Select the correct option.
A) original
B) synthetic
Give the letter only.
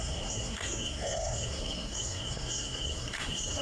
B